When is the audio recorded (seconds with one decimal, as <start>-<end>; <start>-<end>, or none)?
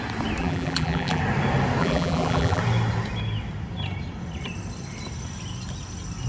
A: 0.0-0.4; 1.2-1.8; 2.6-6.3